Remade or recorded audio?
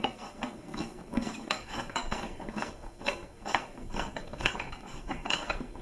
remade